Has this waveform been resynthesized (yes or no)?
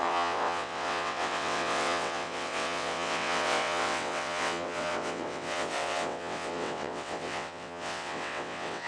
yes